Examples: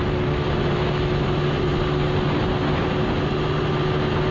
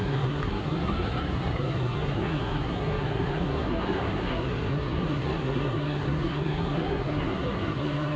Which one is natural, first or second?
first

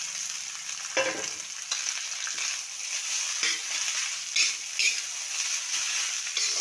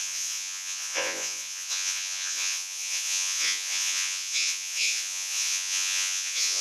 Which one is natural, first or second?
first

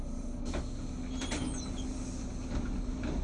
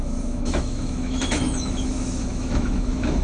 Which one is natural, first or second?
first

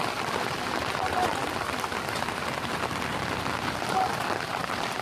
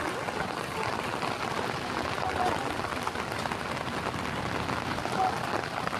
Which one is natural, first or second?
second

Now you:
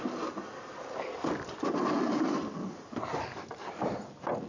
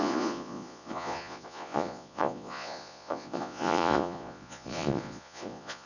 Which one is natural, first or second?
first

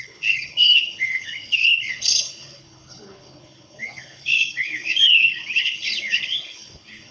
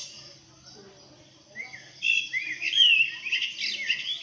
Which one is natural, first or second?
second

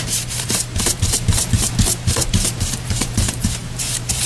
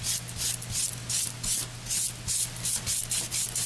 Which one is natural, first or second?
second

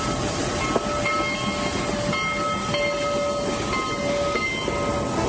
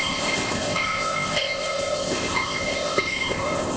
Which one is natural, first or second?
first